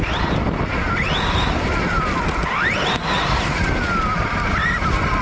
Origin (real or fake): real